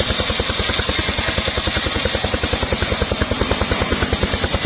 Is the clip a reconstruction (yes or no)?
no